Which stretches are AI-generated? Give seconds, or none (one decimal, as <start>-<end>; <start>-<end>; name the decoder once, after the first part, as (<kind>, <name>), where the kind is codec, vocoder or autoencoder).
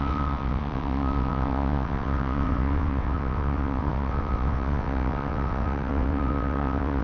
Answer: 0.0-7.0 (vocoder, WaveNeXt)